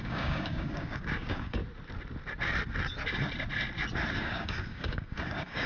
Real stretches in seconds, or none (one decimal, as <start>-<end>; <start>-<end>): 1.6-4.2